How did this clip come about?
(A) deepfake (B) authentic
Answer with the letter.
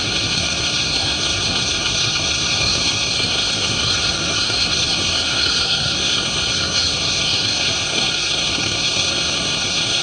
A